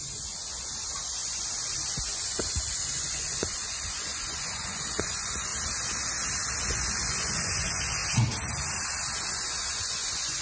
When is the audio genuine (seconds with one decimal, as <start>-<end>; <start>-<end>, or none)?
5.5-6.6; 8.0-9.3